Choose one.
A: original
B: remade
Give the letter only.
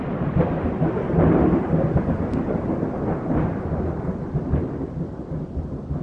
A